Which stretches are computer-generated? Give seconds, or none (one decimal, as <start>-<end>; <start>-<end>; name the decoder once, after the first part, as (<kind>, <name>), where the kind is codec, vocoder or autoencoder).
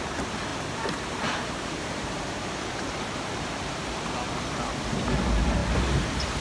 0.5-4.0 (vocoder, BigVGAN v2)